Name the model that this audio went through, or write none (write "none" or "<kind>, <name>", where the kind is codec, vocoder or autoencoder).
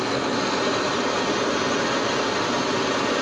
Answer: none